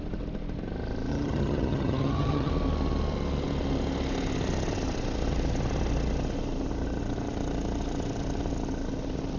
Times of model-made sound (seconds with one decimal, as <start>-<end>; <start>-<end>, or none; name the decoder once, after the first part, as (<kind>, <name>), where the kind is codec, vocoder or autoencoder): 1.1-2.5 (vocoder, HiFi-GAN)